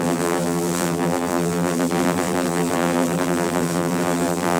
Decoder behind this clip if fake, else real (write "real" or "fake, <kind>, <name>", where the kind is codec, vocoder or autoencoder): fake, vocoder, BigVGAN v2